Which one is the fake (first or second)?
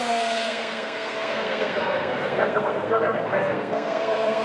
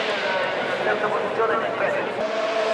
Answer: first